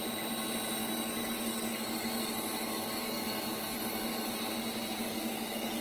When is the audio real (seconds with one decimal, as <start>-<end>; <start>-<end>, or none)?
0.0-0.8; 4.3-5.0